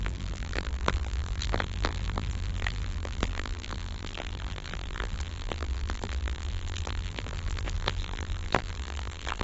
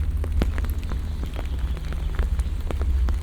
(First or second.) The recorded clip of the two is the second